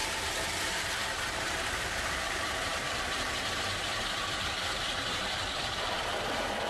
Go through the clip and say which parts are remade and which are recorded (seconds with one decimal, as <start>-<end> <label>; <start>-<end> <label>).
0.0-6.7 remade